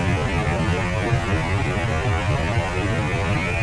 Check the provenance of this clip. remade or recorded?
recorded